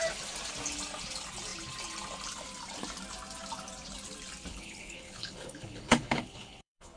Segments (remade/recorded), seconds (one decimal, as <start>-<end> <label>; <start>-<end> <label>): 0.0-4.5 recorded; 4.5-7.0 remade